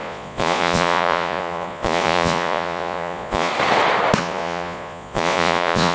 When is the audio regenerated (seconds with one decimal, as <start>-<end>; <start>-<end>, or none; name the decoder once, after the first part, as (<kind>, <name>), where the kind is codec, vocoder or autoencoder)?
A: 0.0-3.5 (vocoder, Vocos); 4.2-5.9